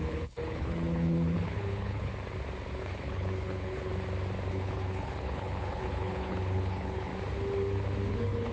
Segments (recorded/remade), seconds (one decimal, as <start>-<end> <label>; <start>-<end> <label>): 0.0-2.1 remade; 2.1-2.8 recorded; 2.8-3.9 remade; 3.9-4.5 recorded; 4.5-7.1 remade; 7.1-8.1 recorded; 8.1-8.5 remade